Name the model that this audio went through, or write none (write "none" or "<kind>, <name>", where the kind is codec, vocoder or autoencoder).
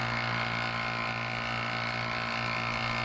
none